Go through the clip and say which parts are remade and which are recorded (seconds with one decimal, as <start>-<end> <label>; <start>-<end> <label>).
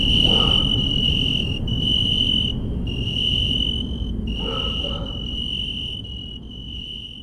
0.0-1.7 remade; 1.7-5.0 recorded; 5.0-7.2 remade